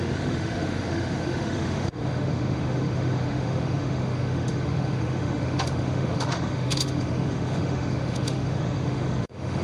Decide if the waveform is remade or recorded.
remade